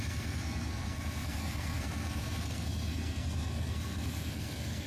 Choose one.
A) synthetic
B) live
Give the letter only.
A